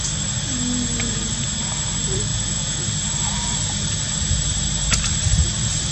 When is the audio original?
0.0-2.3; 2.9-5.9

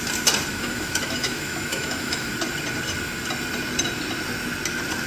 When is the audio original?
0.0-0.5; 2.3-5.1

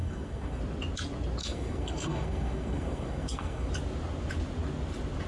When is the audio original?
0.6-1.4; 3.7-5.3

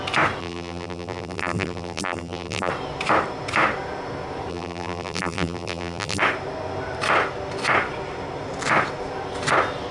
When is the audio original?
0.0-0.4; 2.7-4.5; 6.2-9.9

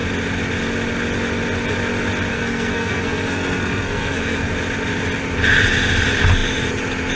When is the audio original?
0.0-2.3; 4.5-7.2

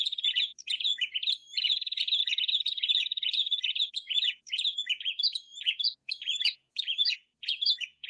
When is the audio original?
none